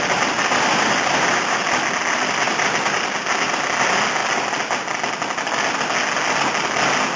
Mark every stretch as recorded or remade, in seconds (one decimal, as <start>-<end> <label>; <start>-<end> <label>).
0.0-7.2 recorded